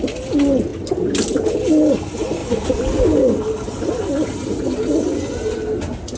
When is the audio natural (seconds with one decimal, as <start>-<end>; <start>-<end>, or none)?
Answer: 0.0-6.2